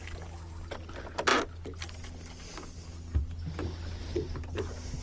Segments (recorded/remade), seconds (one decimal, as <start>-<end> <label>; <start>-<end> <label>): 0.0-5.0 recorded